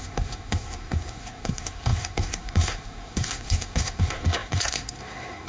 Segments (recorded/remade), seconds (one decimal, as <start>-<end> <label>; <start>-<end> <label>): 0.0-5.5 remade